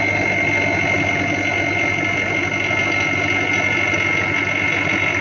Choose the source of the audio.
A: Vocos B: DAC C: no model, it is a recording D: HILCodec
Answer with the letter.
C